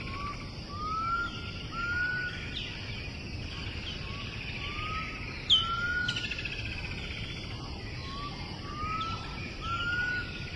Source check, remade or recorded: recorded